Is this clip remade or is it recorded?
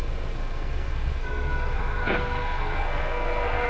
remade